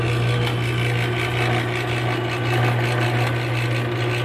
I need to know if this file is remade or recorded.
recorded